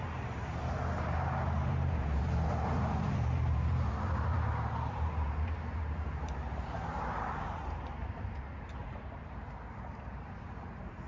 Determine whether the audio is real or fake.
fake